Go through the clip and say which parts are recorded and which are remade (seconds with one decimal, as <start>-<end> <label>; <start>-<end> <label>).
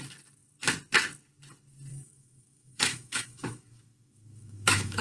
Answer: 0.0-1.9 recorded; 1.9-5.0 remade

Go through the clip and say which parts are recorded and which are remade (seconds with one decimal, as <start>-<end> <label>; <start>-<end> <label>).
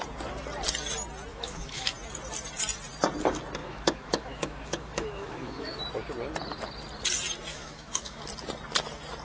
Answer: 0.0-1.3 recorded; 1.3-1.9 remade; 1.9-3.6 recorded; 3.6-5.8 remade; 5.8-7.5 recorded; 7.5-8.2 remade; 8.2-9.2 recorded